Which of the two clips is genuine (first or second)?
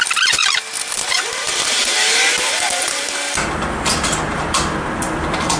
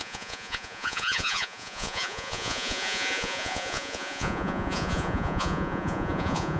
first